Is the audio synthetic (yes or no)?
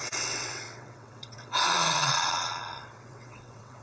yes